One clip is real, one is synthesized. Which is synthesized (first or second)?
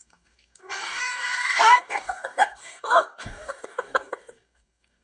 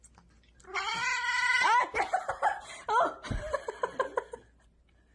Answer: first